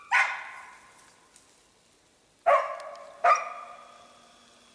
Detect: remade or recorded recorded